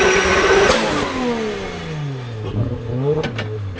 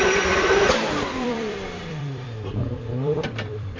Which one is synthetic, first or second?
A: second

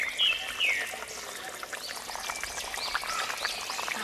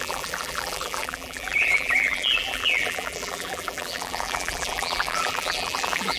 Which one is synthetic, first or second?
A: second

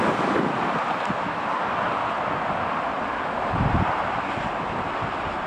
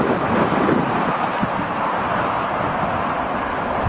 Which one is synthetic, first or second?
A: second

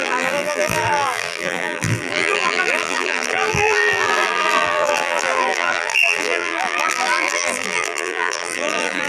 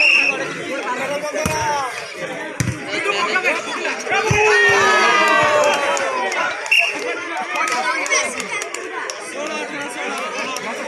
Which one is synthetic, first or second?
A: first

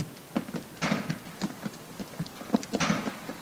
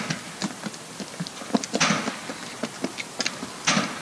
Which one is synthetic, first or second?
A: first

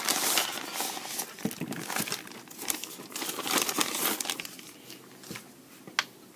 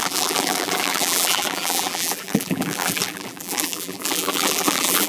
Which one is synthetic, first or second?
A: second